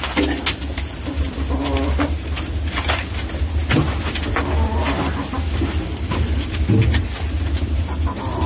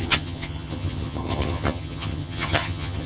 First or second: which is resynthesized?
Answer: second